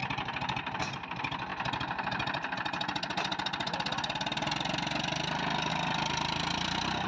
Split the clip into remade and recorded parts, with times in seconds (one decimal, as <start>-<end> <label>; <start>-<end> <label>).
0.0-0.9 remade; 0.9-7.1 recorded